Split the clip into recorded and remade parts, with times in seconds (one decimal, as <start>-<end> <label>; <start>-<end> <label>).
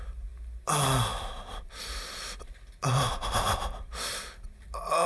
0.0-5.1 recorded